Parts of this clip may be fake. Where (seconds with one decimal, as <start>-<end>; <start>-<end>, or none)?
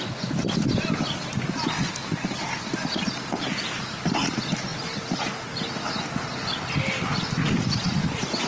none